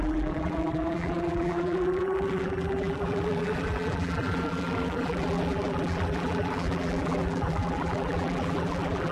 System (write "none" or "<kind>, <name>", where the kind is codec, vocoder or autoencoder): vocoder, BigVGAN v2